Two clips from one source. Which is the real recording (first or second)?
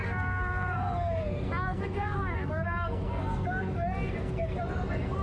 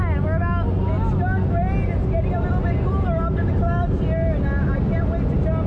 second